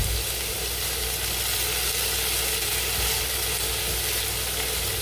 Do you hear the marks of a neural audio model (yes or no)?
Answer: no